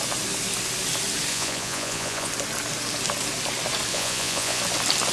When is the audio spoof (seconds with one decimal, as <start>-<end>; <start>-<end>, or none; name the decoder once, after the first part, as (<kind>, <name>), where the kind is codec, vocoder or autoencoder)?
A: 1.3-2.3 (vocoder, Vocos); 3.9-4.6